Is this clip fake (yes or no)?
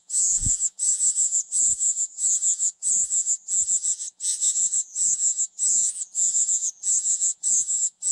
yes